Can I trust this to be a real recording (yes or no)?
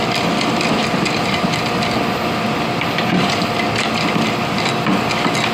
yes